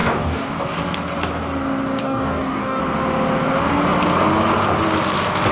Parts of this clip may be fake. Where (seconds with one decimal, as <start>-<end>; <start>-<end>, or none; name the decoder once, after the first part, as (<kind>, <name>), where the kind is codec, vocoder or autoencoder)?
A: 0.0-0.8 (codec, DAC); 2.0-2.8